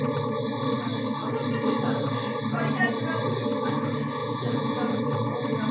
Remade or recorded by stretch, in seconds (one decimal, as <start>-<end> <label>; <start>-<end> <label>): 0.0-4.2 recorded; 4.2-5.0 remade; 5.0-5.7 recorded